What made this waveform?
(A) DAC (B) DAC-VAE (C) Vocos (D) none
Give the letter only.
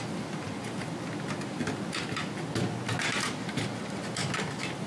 D